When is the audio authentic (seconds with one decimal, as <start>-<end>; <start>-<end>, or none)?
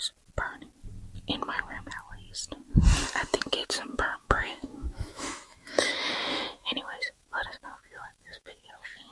0.0-3.6; 8.7-9.1